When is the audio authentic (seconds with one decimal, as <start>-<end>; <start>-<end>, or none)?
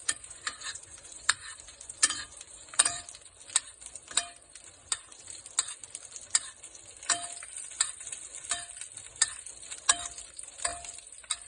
3.0-11.5